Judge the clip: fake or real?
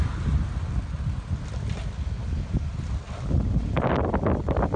real